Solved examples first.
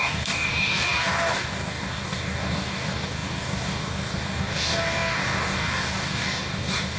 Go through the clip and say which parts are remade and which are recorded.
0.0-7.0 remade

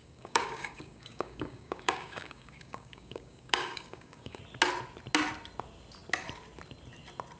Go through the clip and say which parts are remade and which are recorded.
0.0-4.4 remade; 4.4-7.4 recorded